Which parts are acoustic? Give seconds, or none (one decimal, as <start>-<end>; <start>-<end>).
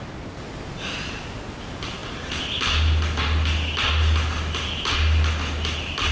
0.0-6.1